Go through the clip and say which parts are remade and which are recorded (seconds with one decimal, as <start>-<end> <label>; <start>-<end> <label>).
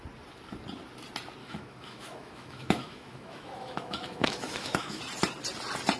0.0-1.4 recorded; 1.4-5.0 remade; 5.0-6.0 recorded